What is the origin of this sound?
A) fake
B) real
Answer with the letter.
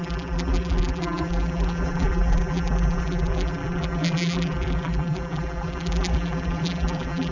A